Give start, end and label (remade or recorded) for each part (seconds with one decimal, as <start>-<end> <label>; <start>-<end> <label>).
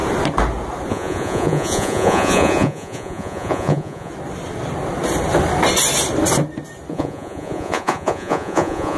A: 0.0-0.9 recorded; 0.9-4.1 remade; 4.1-6.9 recorded; 6.9-9.0 remade